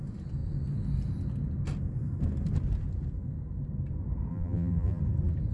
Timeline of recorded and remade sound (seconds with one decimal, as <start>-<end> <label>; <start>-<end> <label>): 0.0-4.3 recorded; 4.3-5.0 remade; 5.0-5.5 recorded